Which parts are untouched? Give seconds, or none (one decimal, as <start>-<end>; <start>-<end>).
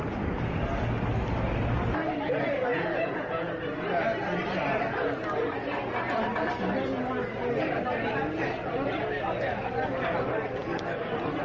0.0-2.7; 3.5-11.4